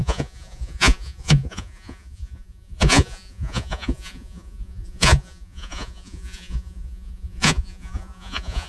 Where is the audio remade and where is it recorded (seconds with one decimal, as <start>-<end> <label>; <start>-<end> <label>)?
0.0-8.7 remade